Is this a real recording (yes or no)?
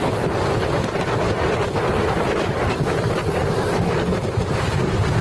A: yes